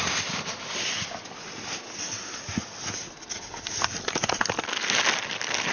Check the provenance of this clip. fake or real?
real